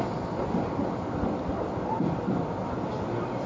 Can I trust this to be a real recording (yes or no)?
yes